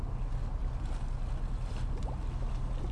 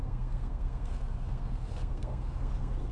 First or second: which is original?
first